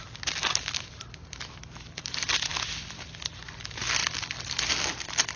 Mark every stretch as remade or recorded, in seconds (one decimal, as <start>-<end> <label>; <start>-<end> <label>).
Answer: 0.0-5.4 recorded